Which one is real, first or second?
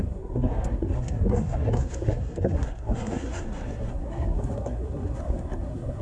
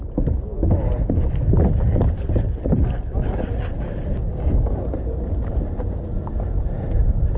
second